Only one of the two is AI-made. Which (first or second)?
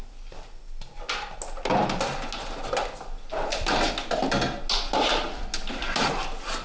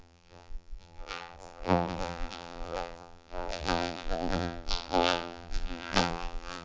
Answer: second